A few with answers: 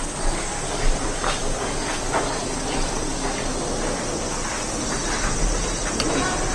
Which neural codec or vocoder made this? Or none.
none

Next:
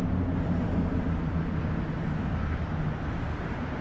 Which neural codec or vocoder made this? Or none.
none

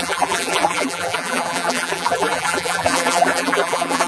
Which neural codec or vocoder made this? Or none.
vocoder, BigVGAN v2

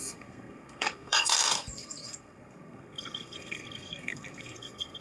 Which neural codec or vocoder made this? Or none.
codec, SNAC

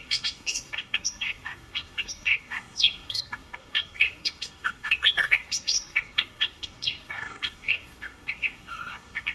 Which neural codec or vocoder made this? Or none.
codec, SNAC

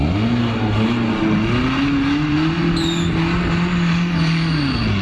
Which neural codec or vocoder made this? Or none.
none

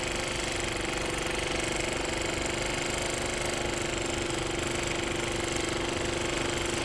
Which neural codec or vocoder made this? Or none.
none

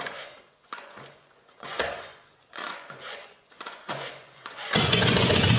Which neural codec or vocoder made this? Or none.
vocoder, Vocos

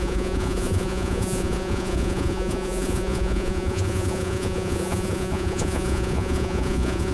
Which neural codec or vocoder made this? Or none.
vocoder, Vocos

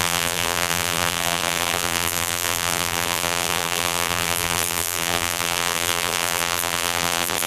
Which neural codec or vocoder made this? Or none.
vocoder, BigVGAN v2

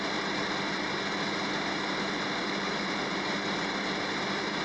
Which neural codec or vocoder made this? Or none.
vocoder, BigVGAN v2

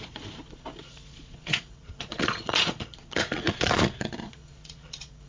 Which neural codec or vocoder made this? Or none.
vocoder, Vocos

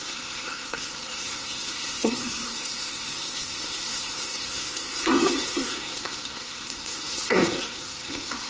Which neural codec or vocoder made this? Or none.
codec, SNAC